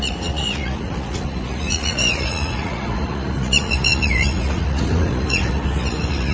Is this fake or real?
fake